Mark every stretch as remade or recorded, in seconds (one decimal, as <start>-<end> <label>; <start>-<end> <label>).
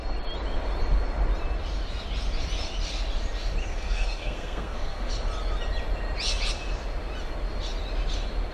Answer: 0.0-3.6 recorded; 3.6-5.1 remade; 5.1-8.5 recorded